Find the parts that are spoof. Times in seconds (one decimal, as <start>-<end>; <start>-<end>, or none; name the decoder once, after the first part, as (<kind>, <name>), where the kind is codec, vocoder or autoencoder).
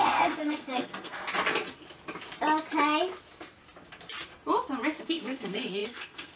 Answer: 0.0-1.2 (codec, SNAC); 5.0-6.4